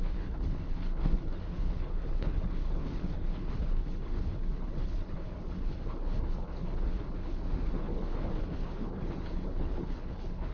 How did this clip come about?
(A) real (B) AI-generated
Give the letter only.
B